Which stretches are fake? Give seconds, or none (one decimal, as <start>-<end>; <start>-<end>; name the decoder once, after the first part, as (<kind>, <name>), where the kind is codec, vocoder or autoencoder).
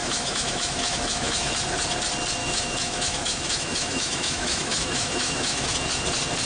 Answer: 0.0-1.5 (autoencoder, DAC-VAE); 2.4-5.7